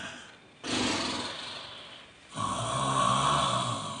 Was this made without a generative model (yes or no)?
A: yes